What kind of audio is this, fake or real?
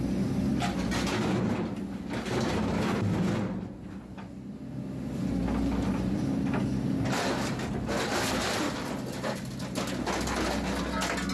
real